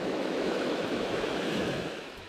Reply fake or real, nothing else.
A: fake